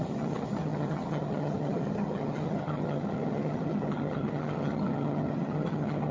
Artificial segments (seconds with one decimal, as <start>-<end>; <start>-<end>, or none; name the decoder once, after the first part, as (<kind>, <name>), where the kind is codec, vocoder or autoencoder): 0.0-6.1 (vocoder, HiFi-GAN)